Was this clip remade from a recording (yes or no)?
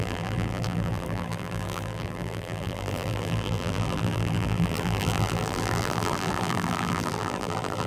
yes